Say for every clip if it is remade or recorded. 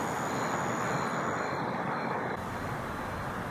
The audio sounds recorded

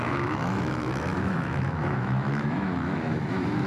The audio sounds remade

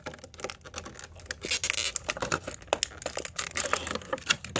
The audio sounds recorded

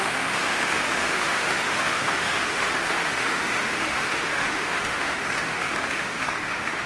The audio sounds remade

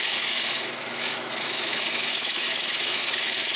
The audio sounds remade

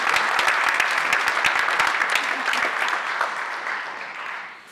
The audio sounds recorded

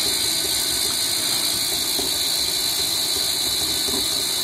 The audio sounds recorded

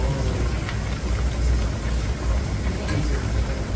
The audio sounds recorded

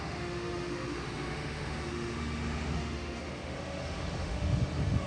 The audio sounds remade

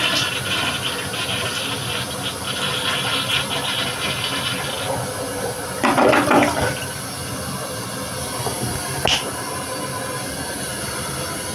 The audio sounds recorded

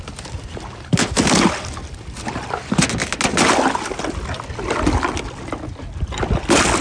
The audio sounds recorded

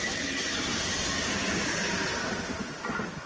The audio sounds recorded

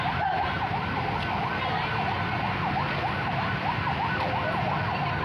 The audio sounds recorded